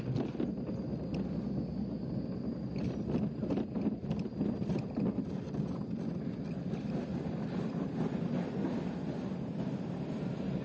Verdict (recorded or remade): recorded